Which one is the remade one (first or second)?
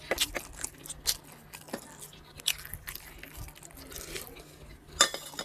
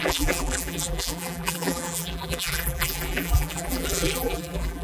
second